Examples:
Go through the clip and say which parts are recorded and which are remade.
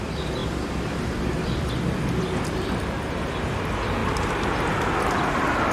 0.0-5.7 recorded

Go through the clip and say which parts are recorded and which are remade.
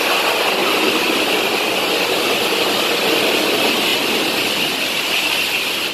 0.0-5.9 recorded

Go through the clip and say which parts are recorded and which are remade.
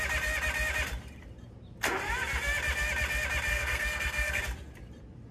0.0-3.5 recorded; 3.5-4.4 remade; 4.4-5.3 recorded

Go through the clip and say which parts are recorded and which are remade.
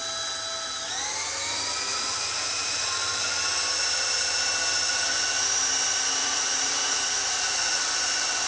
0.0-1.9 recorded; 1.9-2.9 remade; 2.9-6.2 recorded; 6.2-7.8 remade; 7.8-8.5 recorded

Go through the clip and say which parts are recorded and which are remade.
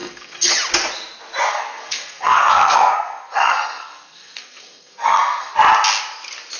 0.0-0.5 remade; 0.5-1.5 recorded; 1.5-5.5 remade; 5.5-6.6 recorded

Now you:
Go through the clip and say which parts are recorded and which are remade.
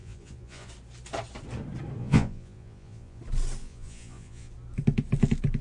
0.0-0.7 remade; 0.7-2.0 recorded; 2.0-3.2 remade; 3.2-3.6 recorded; 3.6-4.5 remade; 4.5-5.6 recorded